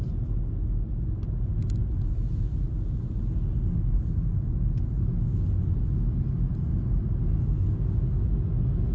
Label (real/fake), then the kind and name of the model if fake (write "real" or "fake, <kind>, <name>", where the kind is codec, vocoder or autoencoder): real